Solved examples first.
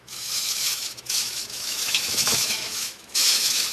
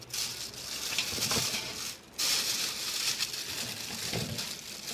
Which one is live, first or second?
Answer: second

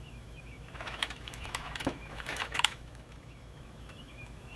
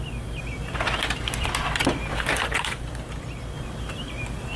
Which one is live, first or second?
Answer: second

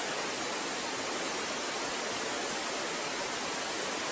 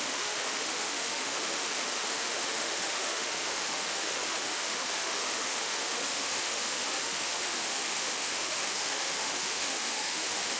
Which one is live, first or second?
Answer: first